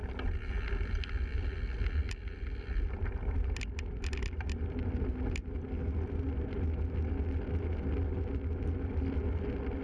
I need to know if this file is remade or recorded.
recorded